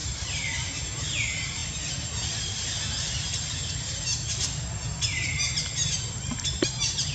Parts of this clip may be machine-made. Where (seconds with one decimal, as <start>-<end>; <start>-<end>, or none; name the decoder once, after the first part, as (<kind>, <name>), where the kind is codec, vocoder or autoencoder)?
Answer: 0.0-0.8 (vocoder, BigVGAN v2)